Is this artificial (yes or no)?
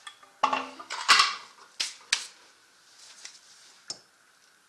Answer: no